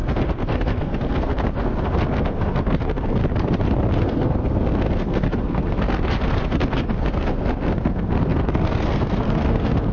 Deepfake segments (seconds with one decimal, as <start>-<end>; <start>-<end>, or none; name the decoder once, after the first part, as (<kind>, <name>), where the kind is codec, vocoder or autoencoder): 0.0-3.2 (codec, SNAC); 4.0-9.9